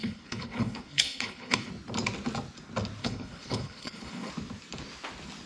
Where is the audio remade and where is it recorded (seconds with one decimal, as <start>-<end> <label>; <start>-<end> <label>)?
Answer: 0.0-1.7 remade; 1.7-3.0 recorded; 3.0-4.3 remade; 4.3-5.5 recorded